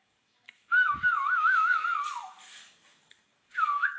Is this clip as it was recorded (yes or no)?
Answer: no